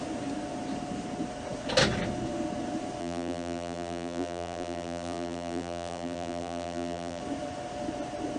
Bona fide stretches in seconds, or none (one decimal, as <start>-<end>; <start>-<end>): 0.0-3.0; 7.2-8.4